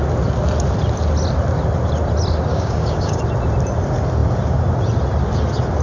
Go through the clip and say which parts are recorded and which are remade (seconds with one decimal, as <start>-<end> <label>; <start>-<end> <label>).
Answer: 0.0-2.5 recorded; 2.5-3.2 remade; 3.2-5.8 recorded

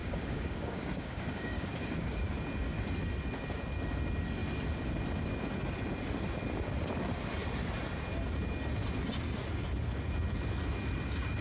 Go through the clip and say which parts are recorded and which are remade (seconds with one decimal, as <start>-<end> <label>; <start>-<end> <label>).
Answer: 0.0-2.3 remade; 2.3-11.4 recorded